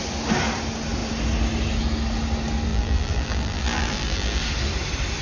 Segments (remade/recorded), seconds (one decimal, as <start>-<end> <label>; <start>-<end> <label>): 0.0-2.7 recorded; 2.7-4.4 remade; 4.4-5.2 recorded